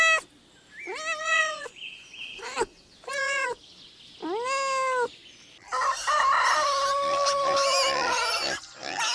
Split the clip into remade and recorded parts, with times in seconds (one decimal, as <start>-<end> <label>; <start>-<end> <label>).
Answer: 0.0-1.2 recorded; 1.2-3.6 remade; 3.6-9.1 recorded